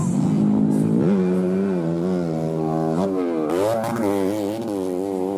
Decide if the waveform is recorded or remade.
recorded